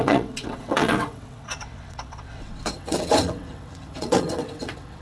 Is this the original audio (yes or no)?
no